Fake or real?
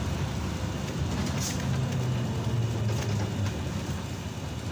real